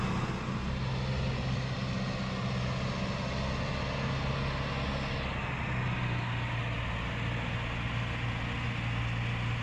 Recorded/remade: recorded